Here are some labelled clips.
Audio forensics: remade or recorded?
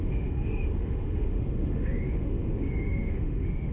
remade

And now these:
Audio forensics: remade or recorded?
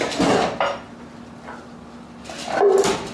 recorded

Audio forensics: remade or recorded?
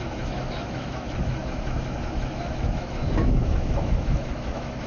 remade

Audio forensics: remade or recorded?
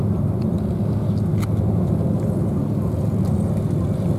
recorded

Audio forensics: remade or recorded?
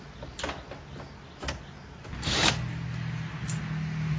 recorded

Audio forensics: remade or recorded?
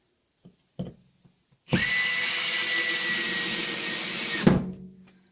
recorded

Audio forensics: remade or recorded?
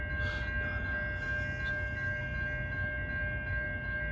recorded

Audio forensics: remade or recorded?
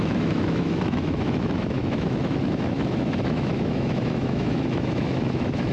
remade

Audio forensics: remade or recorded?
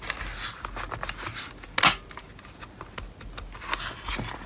recorded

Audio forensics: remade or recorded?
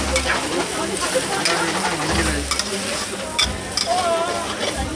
recorded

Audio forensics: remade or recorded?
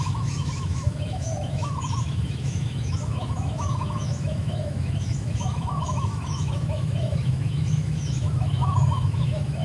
remade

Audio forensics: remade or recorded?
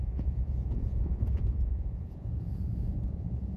remade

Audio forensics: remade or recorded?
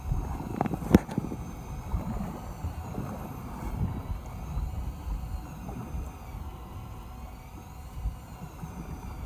recorded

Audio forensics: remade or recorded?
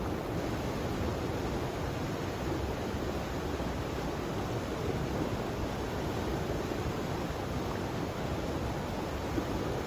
recorded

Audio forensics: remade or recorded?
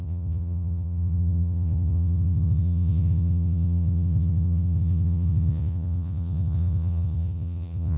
remade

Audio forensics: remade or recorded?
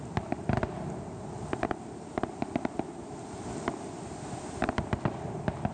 recorded